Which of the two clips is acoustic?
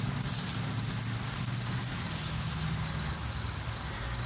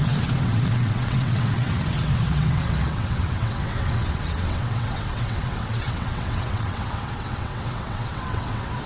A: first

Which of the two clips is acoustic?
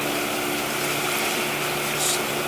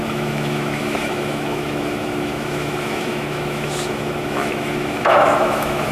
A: first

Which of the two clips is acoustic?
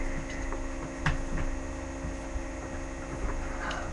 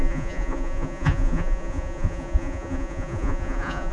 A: first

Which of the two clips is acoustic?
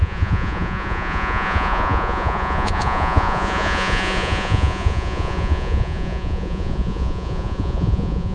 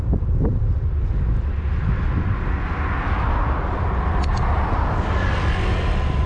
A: second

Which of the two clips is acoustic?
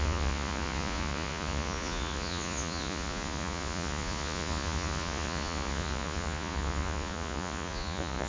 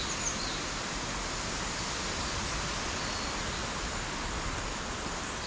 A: second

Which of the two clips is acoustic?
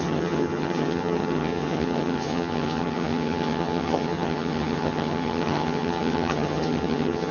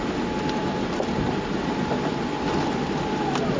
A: second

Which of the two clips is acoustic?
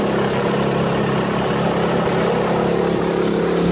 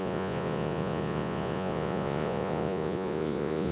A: first